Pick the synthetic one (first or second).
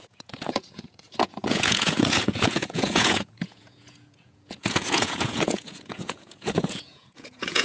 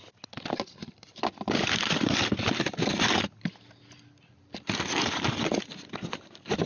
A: first